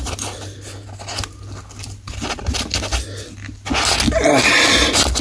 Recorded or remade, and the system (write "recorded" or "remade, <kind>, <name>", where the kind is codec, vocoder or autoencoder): recorded